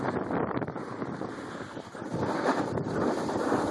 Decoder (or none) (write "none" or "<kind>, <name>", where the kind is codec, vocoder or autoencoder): none